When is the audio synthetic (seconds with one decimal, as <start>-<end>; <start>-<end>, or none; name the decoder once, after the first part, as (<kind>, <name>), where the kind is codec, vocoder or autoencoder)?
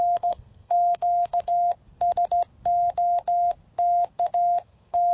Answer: 0.0-1.5 (codec, SNAC); 4.6-5.1